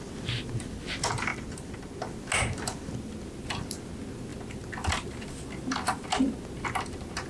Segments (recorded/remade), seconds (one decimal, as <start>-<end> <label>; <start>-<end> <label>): 0.0-7.3 recorded